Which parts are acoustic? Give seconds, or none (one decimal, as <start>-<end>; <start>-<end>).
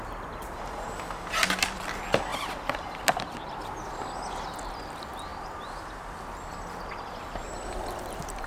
0.0-8.5